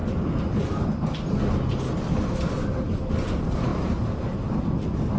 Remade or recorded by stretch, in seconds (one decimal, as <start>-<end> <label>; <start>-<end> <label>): 0.0-5.2 recorded